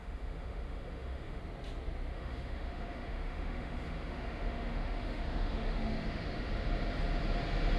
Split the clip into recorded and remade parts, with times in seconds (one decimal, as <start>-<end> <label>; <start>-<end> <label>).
0.0-1.4 remade; 1.4-2.1 recorded; 2.1-6.5 remade; 6.5-7.8 recorded